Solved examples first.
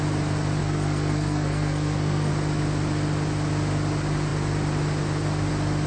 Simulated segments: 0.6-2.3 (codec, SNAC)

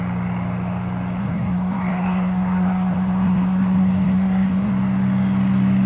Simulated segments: 1.2-4.7 (codec, SNAC)